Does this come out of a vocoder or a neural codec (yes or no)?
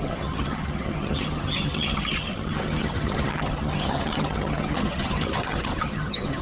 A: yes